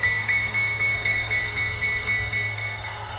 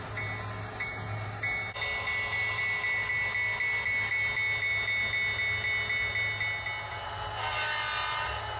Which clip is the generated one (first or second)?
first